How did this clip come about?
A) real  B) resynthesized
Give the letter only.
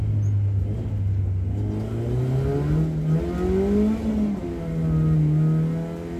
A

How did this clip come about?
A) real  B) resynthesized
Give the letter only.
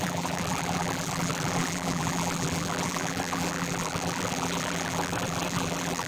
B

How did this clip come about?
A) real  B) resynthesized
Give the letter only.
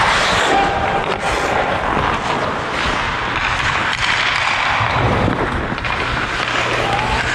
A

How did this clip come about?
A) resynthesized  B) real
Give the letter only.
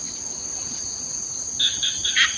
B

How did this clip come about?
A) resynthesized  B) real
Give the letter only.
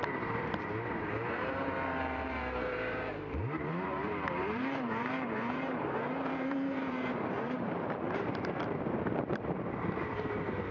A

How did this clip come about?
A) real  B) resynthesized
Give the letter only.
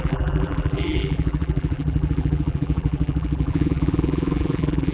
B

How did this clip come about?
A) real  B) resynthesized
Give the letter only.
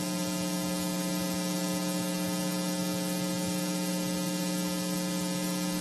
A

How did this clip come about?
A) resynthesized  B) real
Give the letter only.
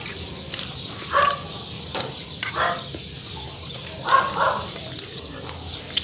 B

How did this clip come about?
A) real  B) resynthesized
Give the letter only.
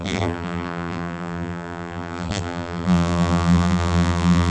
B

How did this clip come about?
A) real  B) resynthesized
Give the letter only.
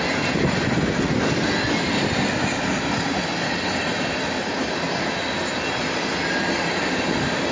A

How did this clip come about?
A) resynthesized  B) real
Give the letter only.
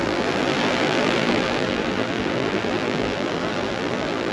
A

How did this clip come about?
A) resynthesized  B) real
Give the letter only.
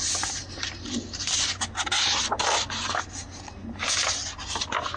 B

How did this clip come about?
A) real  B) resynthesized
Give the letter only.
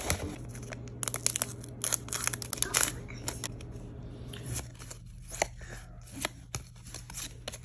A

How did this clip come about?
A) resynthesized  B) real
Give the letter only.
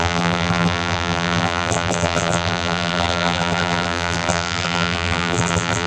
A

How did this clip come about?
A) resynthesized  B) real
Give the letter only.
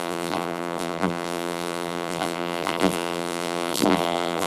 A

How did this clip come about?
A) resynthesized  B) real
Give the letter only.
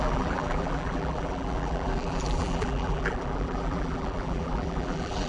A